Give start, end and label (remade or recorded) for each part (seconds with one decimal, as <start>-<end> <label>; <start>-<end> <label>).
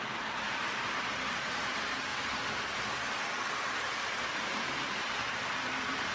0.0-2.1 remade; 2.1-3.5 recorded; 3.5-6.1 remade